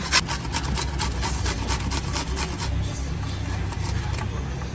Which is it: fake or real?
real